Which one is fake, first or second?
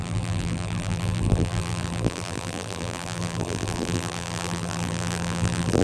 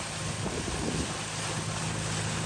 first